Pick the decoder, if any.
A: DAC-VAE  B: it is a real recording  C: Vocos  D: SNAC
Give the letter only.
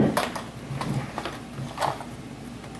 B